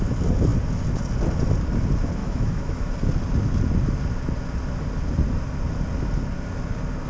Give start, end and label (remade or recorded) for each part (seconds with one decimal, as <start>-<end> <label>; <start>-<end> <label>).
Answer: 0.0-2.2 recorded; 2.2-2.9 remade; 2.9-7.1 recorded